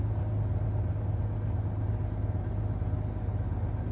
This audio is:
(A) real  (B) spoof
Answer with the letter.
A